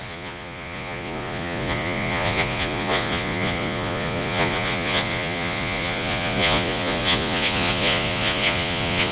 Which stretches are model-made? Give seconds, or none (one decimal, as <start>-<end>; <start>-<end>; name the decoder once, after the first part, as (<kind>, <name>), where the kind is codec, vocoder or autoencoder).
0.0-9.1 (vocoder, Vocos)